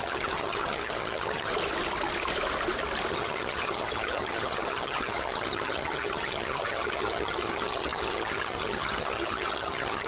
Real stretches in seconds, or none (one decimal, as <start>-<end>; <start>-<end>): 1.5-3.1